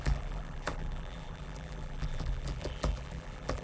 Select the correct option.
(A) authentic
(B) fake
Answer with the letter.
B